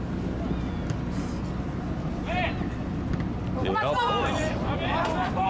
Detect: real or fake real